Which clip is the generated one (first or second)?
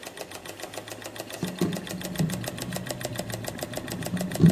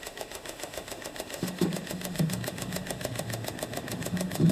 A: second